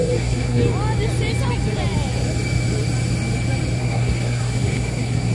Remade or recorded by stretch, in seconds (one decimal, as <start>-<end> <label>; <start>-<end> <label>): 0.0-0.6 remade; 0.6-3.8 recorded; 3.8-5.3 remade